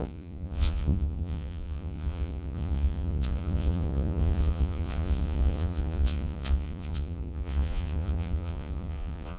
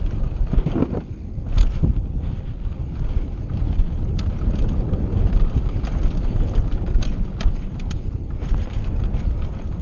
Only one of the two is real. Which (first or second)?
second